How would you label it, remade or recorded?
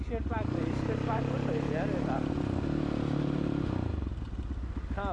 recorded